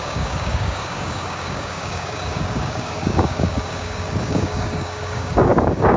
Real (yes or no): no